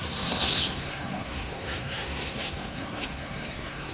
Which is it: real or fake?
fake